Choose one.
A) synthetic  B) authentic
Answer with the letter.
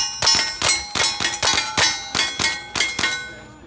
B